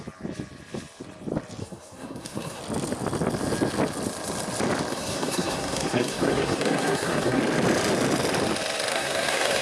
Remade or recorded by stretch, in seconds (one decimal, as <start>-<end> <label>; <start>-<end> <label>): 0.0-1.6 recorded; 1.6-2.6 remade; 2.6-4.9 recorded; 4.9-7.4 remade; 7.4-8.9 recorded; 8.9-9.6 remade